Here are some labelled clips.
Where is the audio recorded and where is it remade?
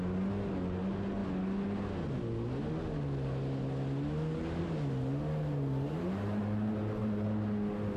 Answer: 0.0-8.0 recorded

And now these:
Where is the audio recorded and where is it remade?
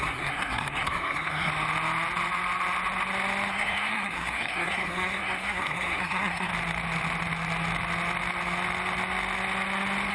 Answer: 0.0-1.5 remade; 1.5-3.5 recorded; 3.5-6.5 remade; 6.5-10.1 recorded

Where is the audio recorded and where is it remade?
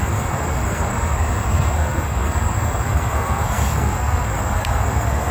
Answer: 0.0-5.3 remade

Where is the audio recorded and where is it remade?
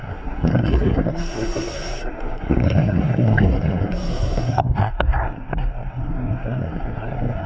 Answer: 0.0-7.5 remade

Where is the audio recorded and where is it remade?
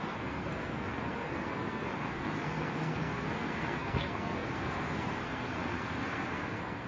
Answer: 0.0-6.9 remade